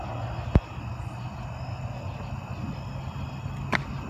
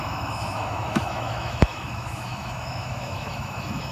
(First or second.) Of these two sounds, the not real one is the second